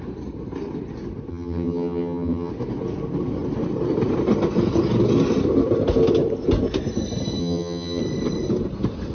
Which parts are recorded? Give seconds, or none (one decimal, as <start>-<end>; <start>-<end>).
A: 0.0-1.3; 2.5-7.4; 8.0-9.1